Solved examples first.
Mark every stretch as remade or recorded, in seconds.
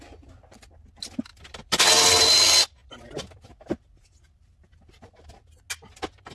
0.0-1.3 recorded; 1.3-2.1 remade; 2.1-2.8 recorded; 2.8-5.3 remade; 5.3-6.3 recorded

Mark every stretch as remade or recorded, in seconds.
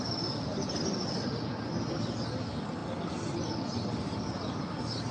0.0-0.5 recorded; 0.5-2.0 remade; 2.0-5.1 recorded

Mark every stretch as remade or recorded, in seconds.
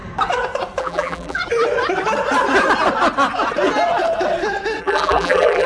0.0-0.8 recorded; 0.8-1.4 remade; 1.4-4.8 recorded; 4.8-5.7 remade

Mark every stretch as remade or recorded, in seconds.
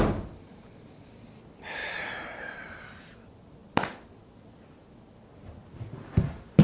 0.0-1.8 recorded; 1.8-3.0 remade; 3.0-6.6 recorded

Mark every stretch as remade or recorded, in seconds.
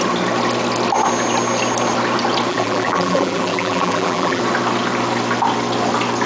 0.0-2.5 recorded; 2.5-4.4 remade; 4.4-6.3 recorded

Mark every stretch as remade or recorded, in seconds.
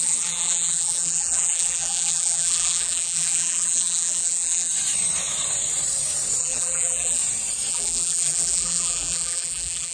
0.0-4.7 remade; 4.7-6.4 recorded; 6.4-7.2 remade; 7.2-7.7 recorded; 7.7-9.9 remade